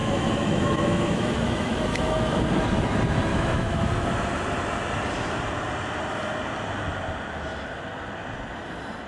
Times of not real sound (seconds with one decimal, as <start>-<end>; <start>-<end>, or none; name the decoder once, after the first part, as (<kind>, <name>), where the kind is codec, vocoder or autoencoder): 0.0-2.4 (autoencoder, DAC-VAE); 3.3-3.9